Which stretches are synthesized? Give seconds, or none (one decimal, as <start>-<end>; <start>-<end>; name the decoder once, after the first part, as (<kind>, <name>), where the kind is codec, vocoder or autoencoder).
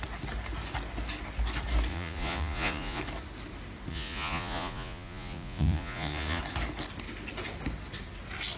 1.9-3.0 (vocoder, Vocos); 3.9-6.4